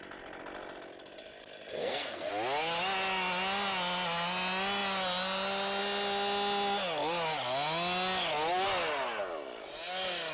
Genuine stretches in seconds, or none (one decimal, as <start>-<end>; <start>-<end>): 0.0-1.7; 2.3-10.3